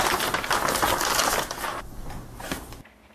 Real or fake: real